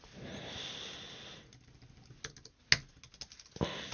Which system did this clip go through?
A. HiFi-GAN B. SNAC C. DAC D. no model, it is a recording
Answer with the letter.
D